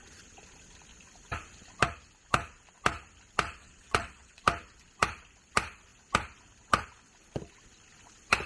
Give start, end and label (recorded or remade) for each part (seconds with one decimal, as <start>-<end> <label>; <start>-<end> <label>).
0.0-3.6 recorded; 3.6-4.4 remade; 4.4-8.5 recorded